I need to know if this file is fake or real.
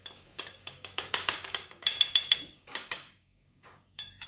fake